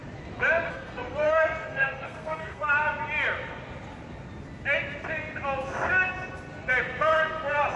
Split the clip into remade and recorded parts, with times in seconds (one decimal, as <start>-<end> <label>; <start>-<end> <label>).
0.0-0.7 recorded; 0.7-2.7 remade; 2.7-7.8 recorded